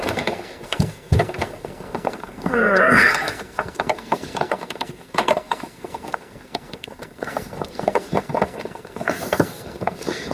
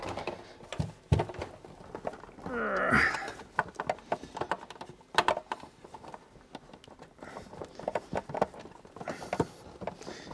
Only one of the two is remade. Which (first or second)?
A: first